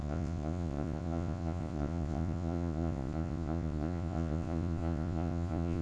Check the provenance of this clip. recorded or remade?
remade